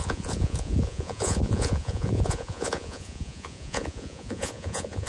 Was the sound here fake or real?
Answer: fake